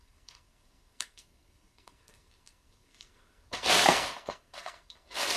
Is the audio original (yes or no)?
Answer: no